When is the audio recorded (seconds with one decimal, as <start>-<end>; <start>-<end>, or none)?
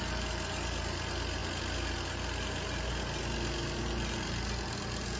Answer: 0.0-5.2